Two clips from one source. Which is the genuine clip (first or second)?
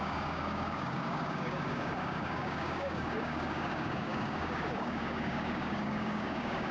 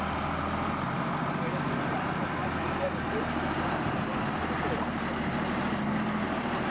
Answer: second